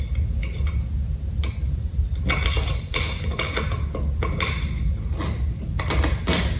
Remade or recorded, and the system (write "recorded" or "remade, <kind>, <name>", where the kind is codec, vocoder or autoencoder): recorded